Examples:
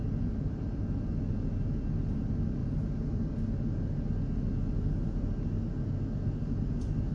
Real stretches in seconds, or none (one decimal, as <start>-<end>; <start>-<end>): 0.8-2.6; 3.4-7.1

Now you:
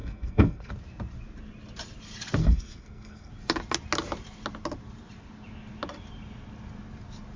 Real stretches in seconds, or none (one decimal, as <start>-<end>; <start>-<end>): 0.7-2.4; 3.3-7.4

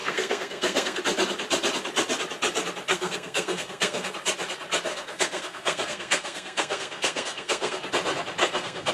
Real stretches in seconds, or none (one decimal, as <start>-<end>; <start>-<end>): 1.0-2.9; 4.1-4.9; 7.9-8.4

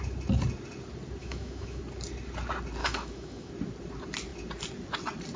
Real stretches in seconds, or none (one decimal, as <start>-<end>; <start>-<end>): 0.0-1.2; 1.8-2.8; 3.5-5.4

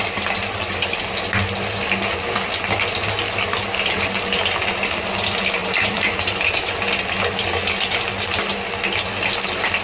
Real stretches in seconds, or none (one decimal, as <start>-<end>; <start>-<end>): 0.0-5.6; 6.7-9.8

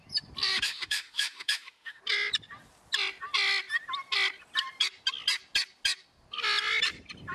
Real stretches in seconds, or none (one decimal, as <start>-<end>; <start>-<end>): 0.0-0.5; 2.0-7.3

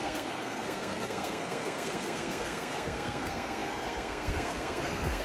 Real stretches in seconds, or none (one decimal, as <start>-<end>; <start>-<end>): none

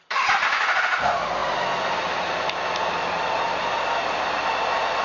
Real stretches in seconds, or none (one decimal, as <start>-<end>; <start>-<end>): 0.0-5.0